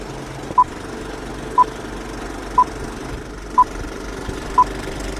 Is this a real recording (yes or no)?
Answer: yes